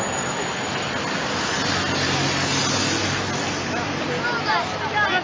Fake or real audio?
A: real